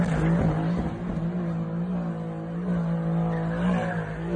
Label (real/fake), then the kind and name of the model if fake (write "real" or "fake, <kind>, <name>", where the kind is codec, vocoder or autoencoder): real